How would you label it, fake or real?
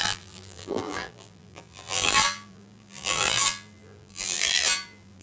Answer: fake